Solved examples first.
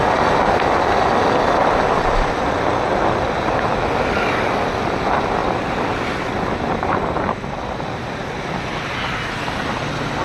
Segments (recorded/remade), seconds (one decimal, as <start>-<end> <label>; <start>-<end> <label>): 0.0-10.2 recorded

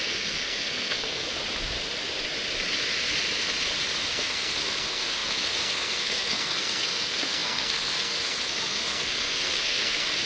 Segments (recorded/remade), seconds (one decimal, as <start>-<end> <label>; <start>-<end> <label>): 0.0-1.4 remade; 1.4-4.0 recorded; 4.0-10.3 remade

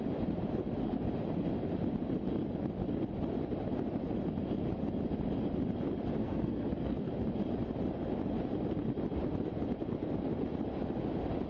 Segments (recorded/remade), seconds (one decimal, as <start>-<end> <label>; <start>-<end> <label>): 0.0-6.2 recorded; 6.2-7.1 remade; 7.1-11.5 recorded

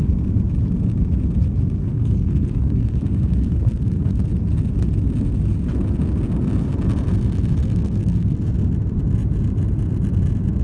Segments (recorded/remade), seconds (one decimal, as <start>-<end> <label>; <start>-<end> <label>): 0.0-1.8 recorded; 1.8-4.3 remade; 4.3-7.6 recorded; 7.6-8.4 remade; 8.4-10.6 recorded

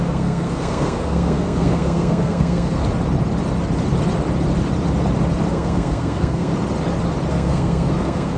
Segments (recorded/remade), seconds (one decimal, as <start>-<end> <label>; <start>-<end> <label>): 0.0-2.8 remade; 2.8-5.5 recorded; 5.5-6.5 remade; 6.5-7.3 recorded; 7.3-8.4 remade

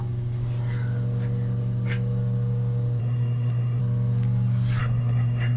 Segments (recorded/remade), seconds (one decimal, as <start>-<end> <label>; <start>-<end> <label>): 0.0-3.0 recorded; 3.0-3.8 remade; 3.8-4.8 recorded; 4.8-5.6 remade

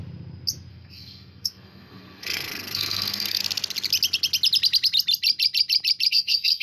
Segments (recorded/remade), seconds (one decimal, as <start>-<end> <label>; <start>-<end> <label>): 0.0-0.7 recorded; 0.7-3.4 remade; 3.4-6.1 recorded; 6.1-6.6 remade

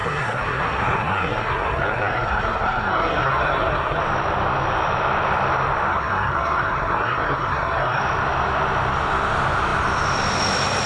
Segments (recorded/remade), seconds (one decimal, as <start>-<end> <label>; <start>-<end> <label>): 0.0-4.0 remade; 4.0-5.9 recorded; 5.9-8.0 remade; 8.0-10.9 recorded